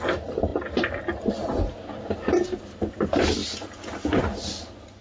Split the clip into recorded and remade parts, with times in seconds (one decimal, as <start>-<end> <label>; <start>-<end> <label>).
0.0-5.0 recorded